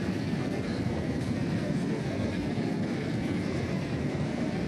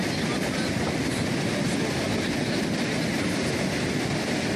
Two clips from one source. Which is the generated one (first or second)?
first